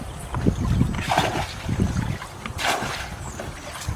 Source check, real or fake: real